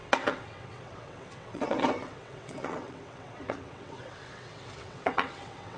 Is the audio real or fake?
fake